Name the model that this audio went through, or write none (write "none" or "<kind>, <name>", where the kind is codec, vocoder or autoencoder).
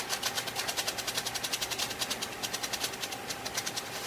none